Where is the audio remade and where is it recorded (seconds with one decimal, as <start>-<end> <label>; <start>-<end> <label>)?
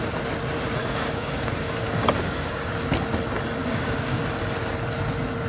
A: 0.0-0.8 recorded; 0.8-2.7 remade; 2.7-3.6 recorded; 3.6-4.2 remade; 4.2-5.5 recorded